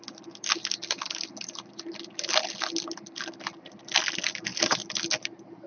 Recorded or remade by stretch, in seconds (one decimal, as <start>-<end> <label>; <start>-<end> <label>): 0.0-5.7 recorded